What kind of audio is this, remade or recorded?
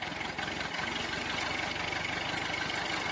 recorded